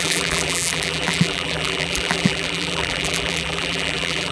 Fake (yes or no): yes